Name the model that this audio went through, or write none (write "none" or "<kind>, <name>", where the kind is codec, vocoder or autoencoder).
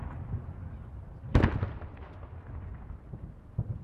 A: none